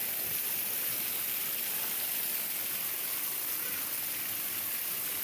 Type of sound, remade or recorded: recorded